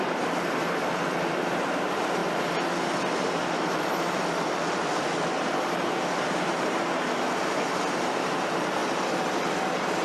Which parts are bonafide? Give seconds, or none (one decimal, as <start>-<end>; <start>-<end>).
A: 2.2-5.4